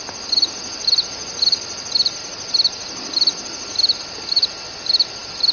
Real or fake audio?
real